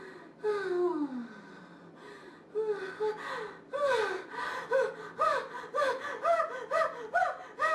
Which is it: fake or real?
real